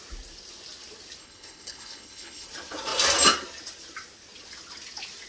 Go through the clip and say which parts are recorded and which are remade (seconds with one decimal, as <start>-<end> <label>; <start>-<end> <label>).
0.0-1.2 recorded; 1.2-2.5 remade; 2.5-5.3 recorded